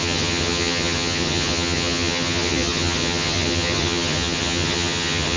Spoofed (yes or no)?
yes